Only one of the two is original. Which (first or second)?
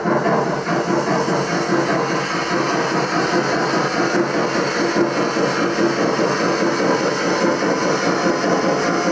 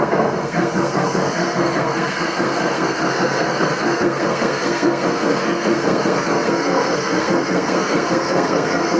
first